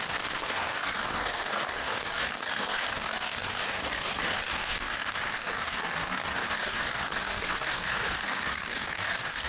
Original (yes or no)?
no